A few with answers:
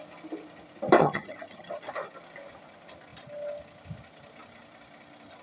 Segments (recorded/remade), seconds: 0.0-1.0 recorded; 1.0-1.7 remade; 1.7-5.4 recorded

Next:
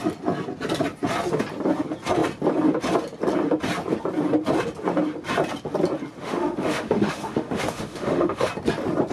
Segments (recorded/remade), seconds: 0.0-6.2 recorded; 6.2-8.5 remade; 8.5-9.1 recorded

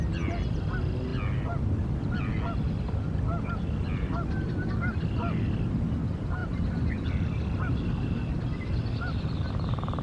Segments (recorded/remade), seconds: 0.0-10.0 recorded

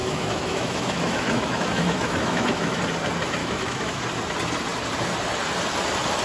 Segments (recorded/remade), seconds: 0.0-2.8 remade; 2.8-3.4 recorded; 3.4-4.0 remade; 4.0-6.2 recorded